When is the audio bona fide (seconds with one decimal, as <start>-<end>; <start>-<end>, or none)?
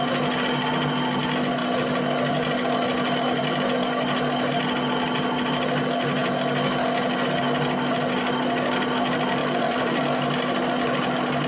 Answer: 0.0-9.4; 10.0-11.5